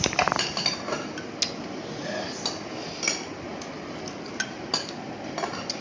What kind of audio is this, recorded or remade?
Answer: recorded